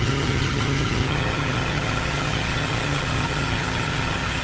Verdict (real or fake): fake